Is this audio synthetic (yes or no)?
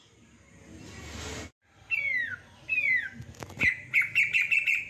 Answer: no